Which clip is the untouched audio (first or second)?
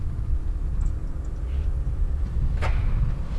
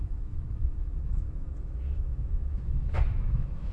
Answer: first